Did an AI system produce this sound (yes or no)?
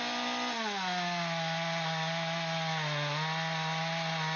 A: no